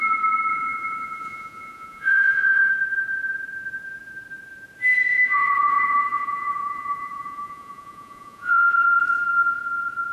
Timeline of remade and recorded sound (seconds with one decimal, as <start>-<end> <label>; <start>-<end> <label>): 0.0-0.5 recorded; 0.5-2.7 remade; 2.7-5.1 recorded; 5.1-8.7 remade; 8.7-10.1 recorded